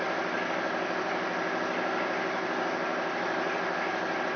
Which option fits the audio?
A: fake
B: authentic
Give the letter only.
B